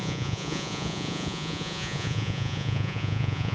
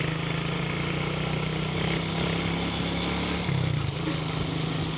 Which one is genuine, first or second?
second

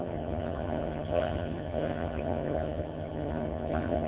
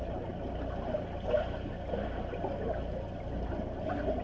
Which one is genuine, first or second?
second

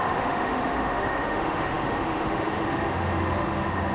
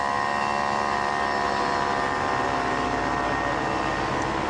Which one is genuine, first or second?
second